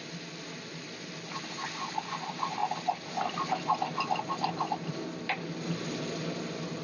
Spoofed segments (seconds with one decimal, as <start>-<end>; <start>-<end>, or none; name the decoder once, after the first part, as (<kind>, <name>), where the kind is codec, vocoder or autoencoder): none